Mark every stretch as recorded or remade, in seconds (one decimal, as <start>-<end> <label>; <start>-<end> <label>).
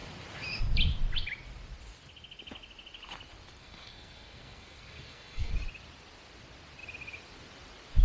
0.0-3.6 recorded; 3.6-5.5 remade; 5.5-8.0 recorded